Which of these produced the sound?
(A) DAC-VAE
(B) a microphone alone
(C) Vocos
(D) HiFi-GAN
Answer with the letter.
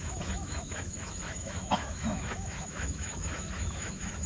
A